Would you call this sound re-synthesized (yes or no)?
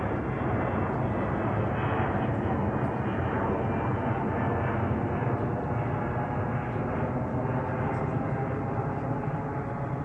no